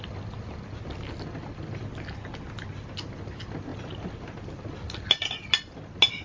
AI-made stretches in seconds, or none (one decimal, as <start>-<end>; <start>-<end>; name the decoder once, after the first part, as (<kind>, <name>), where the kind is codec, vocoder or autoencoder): none